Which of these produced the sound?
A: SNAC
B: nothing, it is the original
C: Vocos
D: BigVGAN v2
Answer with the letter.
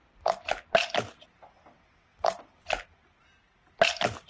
B